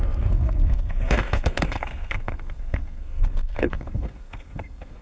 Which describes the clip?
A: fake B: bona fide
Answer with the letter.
A